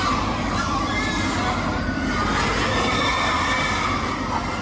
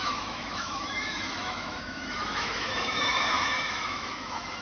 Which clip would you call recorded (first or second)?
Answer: first